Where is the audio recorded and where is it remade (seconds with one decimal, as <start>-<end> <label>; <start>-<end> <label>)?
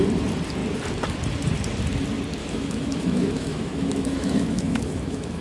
0.0-2.4 recorded; 2.4-5.4 remade